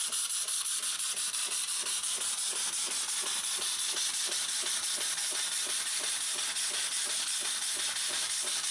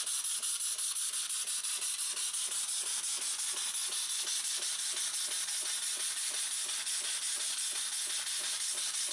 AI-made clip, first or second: first